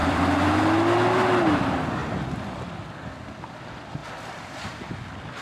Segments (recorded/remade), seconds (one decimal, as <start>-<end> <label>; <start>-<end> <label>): 0.0-0.6 remade; 0.6-2.0 recorded; 2.0-2.8 remade; 2.8-4.0 recorded; 4.0-4.9 remade; 4.9-5.4 recorded